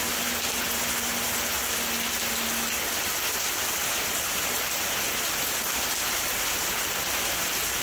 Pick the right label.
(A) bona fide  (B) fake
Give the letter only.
A